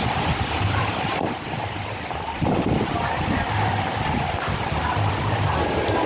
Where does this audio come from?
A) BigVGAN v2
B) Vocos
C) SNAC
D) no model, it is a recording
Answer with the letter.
A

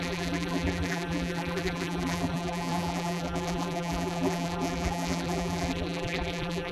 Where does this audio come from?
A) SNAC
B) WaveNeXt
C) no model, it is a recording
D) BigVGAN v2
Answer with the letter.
D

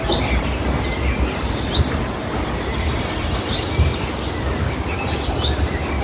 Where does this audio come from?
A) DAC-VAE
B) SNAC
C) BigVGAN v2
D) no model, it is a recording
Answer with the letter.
D